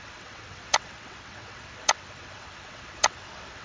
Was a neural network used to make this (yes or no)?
yes